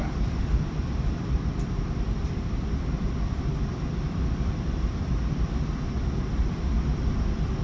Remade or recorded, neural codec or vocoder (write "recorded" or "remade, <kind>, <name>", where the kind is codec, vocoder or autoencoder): remade, vocoder, BigVGAN v2